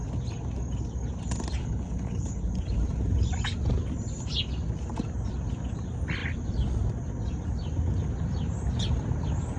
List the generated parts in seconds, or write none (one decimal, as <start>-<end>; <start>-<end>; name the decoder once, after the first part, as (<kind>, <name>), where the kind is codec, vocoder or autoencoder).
1.6-2.5 (codec, HILCodec)